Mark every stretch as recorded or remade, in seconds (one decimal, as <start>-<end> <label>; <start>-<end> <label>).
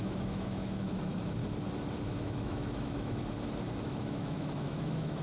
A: 0.0-1.4 remade; 1.4-2.0 recorded; 2.0-3.2 remade; 3.2-3.8 recorded; 3.8-5.2 remade